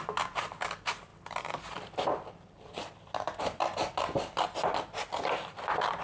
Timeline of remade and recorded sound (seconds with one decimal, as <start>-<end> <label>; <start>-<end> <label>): 0.0-6.0 recorded

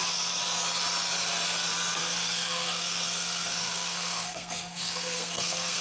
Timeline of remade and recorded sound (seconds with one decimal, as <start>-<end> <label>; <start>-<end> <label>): 0.0-2.0 recorded; 2.0-5.8 remade

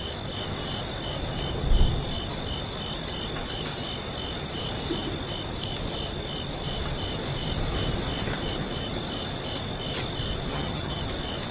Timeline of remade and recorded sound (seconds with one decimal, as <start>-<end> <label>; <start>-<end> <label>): 0.0-10.5 recorded; 10.5-11.0 remade; 11.0-11.5 recorded

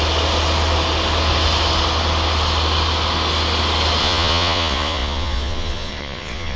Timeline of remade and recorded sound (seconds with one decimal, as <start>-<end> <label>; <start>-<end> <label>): 0.0-4.0 recorded; 4.0-6.6 remade

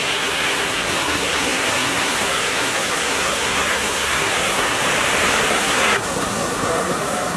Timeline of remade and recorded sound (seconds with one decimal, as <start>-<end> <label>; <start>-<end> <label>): 0.0-4.8 remade; 4.8-5.5 recorded; 5.5-7.4 remade

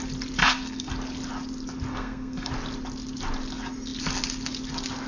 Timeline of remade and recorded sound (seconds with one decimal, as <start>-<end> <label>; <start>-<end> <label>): 0.0-0.4 recorded; 0.4-0.9 remade; 0.9-1.9 recorded; 1.9-2.5 remade; 2.5-5.1 recorded

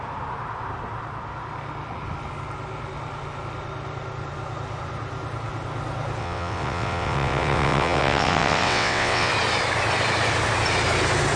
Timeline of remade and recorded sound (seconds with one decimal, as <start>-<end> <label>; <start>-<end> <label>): 0.0-6.2 recorded; 6.2-9.3 remade; 9.3-11.4 recorded